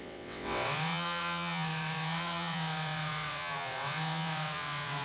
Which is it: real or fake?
fake